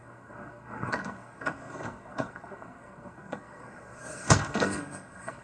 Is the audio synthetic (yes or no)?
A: yes